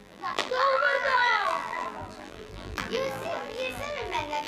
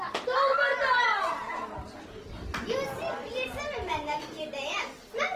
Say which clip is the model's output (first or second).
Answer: first